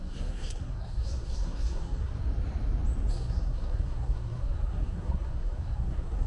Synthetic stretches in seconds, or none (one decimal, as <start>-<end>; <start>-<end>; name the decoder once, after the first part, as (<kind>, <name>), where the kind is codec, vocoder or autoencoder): 0.0-2.1 (codec, SNAC); 3.1-6.3